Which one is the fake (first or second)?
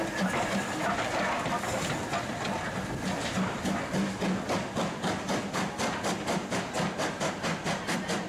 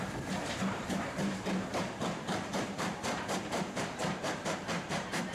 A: second